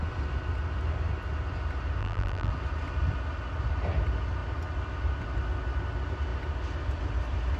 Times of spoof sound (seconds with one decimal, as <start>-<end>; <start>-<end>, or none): 2.0-2.5